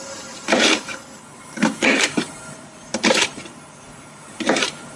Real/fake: fake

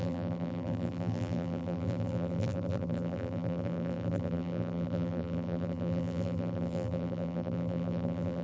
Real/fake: fake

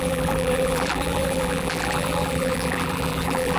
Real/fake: fake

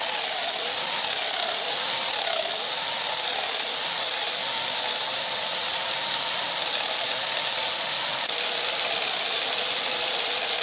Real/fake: fake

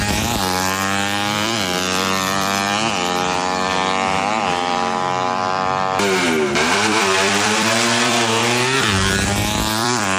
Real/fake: fake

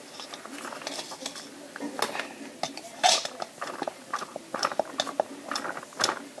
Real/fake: real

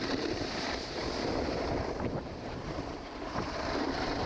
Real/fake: fake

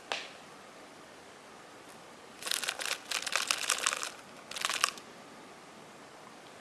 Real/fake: real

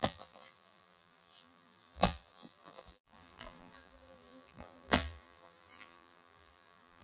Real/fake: fake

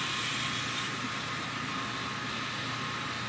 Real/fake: real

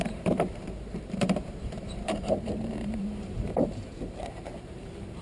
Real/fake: fake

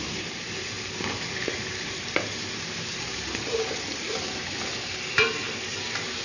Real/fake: fake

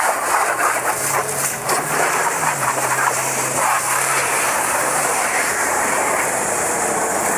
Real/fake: fake